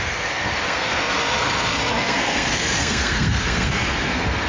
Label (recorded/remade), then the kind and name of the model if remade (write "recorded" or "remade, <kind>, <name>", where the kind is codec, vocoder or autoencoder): remade, codec, SNAC